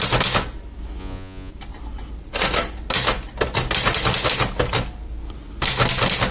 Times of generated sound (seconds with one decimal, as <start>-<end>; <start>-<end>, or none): 1.0-1.5